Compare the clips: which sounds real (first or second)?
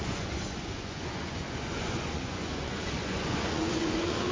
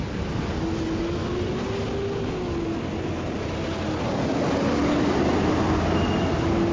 second